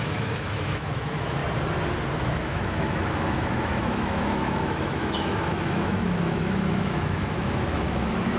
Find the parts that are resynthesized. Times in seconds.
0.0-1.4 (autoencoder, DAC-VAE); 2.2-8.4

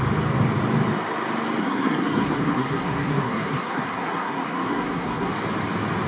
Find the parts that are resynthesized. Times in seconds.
1.6-5.3 (codec, SNAC)

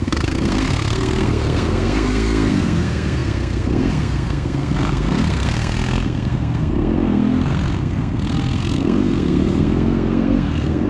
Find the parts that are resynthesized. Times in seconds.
0.0-10.9 (codec, SNAC)

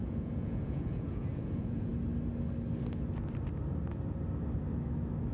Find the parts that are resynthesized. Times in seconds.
0.0-1.9 (vocoder, Vocos)

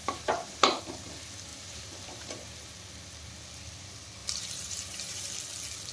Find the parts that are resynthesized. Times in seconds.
0.0-0.8 (vocoder, BigVGAN v2); 1.5-2.3; 4.2-5.3

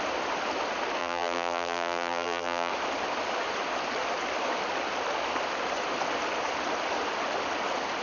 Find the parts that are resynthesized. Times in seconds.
1.0-2.7 (vocoder, BigVGAN v2)

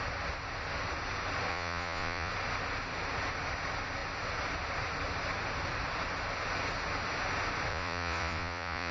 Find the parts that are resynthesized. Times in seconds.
1.5-2.3 (vocoder, Vocos); 7.7-8.9

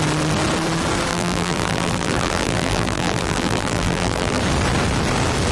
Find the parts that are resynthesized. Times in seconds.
1.1-4.4 (vocoder, BigVGAN v2)